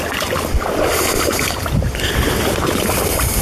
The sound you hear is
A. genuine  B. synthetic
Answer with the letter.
A